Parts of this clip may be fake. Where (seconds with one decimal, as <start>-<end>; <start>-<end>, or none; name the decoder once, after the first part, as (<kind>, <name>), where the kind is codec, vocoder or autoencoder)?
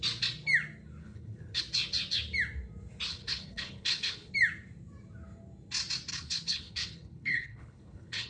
1.0-1.6 (codec, HILCodec); 3.1-4.3; 6.1-8.3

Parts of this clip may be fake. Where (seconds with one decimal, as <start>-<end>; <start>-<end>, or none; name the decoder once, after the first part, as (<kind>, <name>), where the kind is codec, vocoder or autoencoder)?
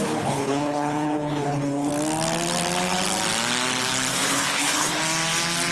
0.0-1.9 (codec, HILCodec); 4.1-5.0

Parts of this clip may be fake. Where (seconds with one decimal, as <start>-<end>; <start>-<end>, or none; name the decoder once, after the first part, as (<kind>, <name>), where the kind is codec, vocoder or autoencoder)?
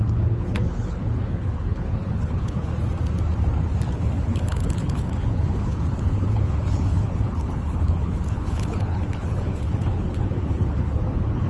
0.0-2.7 (codec, HILCodec); 3.9-11.5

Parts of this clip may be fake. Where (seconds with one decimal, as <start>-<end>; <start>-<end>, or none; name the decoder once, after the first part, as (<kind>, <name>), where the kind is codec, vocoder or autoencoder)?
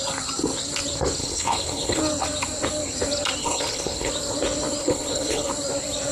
1.2-2.0 (codec, HILCodec); 3.4-4.1; 4.8-5.5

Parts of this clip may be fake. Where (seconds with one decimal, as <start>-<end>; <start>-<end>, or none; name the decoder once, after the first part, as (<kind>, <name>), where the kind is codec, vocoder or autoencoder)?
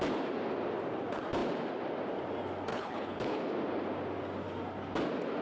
2.7-3.4 (codec, HILCodec)